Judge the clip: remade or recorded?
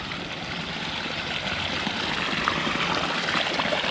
recorded